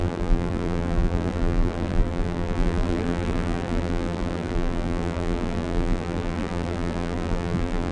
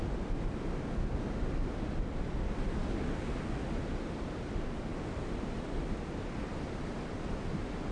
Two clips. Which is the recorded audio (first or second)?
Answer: second